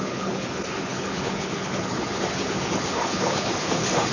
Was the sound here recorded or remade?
remade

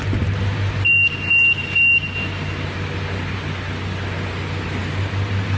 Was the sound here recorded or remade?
recorded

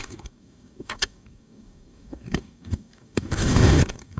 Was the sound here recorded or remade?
remade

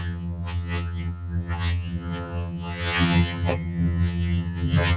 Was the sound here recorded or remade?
remade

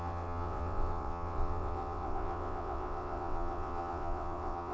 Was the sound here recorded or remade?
remade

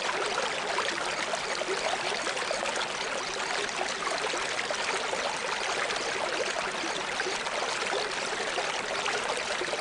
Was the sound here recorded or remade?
recorded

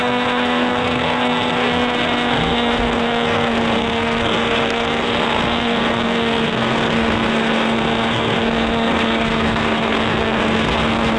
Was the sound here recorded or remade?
remade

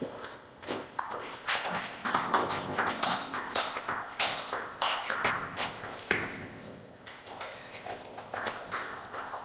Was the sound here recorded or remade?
remade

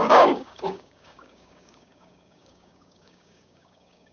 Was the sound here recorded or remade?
remade